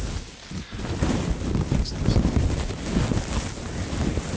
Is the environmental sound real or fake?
real